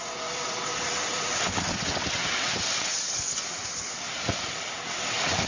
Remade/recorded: remade